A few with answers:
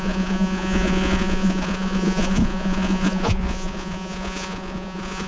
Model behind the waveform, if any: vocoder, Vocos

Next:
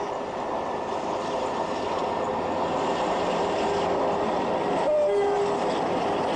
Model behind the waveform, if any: none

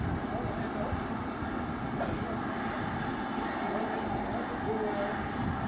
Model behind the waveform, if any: none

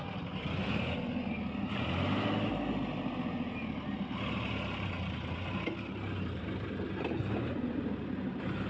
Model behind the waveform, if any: none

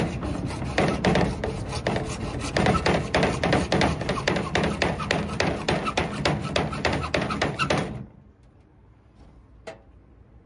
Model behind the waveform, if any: none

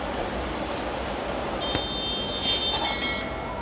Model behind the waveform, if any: none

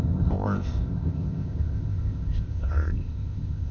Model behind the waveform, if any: codec, ZipCodec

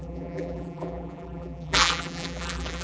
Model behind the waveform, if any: vocoder, BigVGAN v2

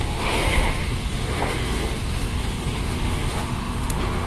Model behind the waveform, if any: autoencoder, DAC-VAE